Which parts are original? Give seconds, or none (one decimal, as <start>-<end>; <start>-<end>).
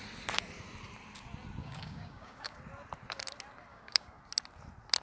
0.0-1.6; 2.6-3.7; 4.2-5.0